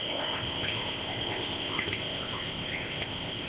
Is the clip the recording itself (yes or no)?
no